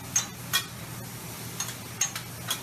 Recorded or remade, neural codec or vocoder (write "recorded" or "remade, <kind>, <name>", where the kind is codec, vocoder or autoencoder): recorded